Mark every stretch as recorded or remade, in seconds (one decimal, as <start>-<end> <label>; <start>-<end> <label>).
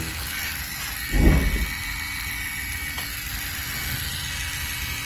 0.0-5.0 recorded